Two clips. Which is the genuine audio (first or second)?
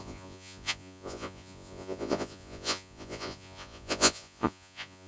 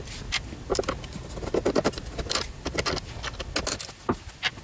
second